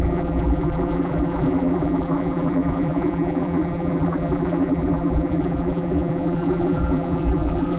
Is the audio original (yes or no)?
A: no